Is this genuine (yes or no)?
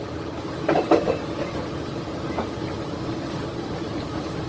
yes